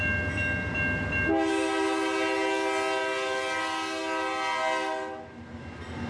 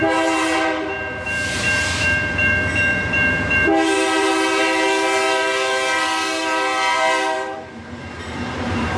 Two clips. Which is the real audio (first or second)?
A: first